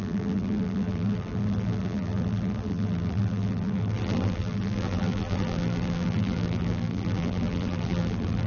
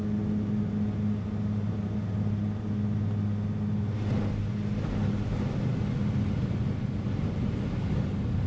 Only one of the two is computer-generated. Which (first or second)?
first